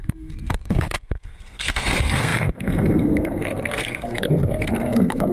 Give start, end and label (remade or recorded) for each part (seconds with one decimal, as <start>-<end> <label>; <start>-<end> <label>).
0.0-5.3 remade